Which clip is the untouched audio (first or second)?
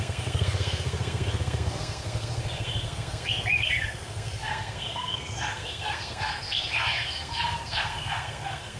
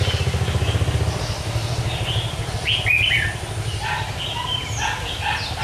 second